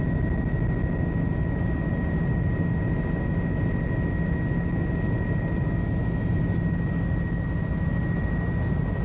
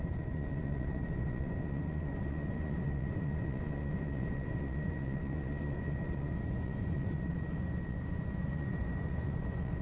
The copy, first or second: second